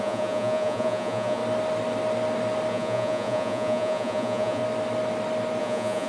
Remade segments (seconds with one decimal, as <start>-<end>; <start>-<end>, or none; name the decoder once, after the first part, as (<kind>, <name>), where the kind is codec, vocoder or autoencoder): 0.0-1.4 (vocoder, Vocos); 2.7-4.6; 5.6-6.1